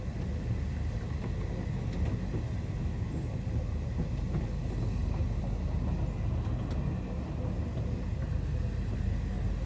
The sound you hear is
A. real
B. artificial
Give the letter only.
A